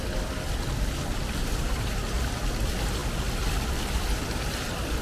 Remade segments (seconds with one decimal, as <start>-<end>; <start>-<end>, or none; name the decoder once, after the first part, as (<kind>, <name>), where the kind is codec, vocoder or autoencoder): none